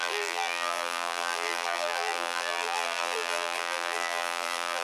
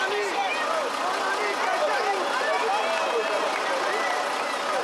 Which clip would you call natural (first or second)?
second